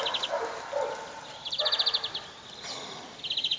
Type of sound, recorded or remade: recorded